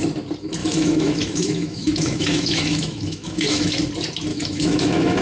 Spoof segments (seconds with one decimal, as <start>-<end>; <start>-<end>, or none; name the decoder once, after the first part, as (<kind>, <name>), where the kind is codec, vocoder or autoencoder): 0.6-3.7 (autoencoder, DAC-VAE); 4.3-5.2